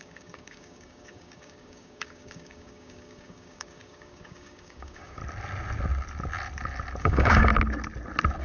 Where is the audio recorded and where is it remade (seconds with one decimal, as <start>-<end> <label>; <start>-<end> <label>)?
0.0-5.2 remade; 5.2-7.0 recorded; 7.0-7.5 remade; 7.5-8.4 recorded